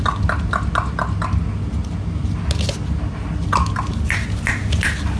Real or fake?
real